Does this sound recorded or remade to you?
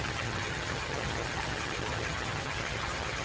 remade